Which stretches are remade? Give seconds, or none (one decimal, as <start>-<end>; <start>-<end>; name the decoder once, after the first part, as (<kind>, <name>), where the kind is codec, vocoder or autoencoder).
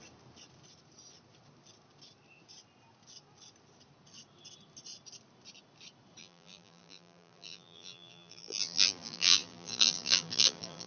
6.2-10.9 (vocoder, BigVGAN v2)